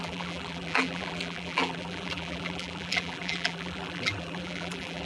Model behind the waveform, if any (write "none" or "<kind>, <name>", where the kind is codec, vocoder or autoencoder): vocoder, BigVGAN v2